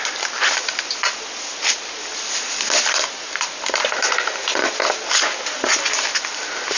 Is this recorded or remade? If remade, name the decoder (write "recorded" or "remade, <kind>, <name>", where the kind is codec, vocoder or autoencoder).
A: recorded